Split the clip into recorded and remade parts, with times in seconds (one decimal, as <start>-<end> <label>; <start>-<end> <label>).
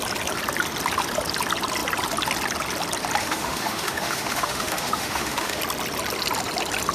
0.0-3.2 recorded; 3.2-5.6 remade; 5.6-6.9 recorded